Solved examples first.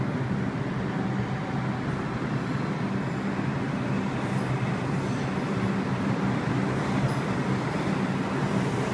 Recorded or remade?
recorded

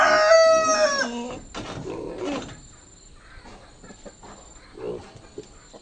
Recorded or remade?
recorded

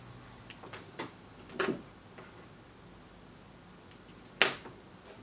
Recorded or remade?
recorded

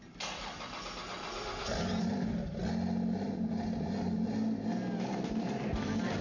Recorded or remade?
recorded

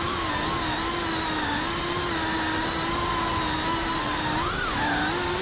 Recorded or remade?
recorded